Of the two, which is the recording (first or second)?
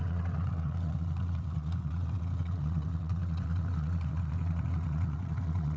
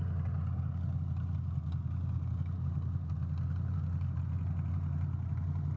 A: second